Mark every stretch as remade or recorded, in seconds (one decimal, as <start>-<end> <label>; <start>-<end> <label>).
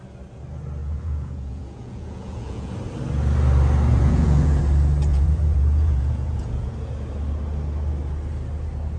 0.0-0.8 recorded; 0.8-2.7 remade; 2.7-3.9 recorded; 3.9-4.6 remade; 4.6-5.1 recorded; 5.1-6.7 remade; 6.7-9.0 recorded